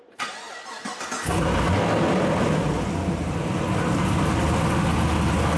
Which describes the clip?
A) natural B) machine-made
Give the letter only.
A